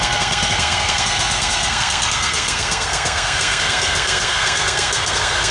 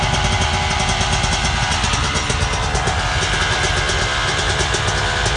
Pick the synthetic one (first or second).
first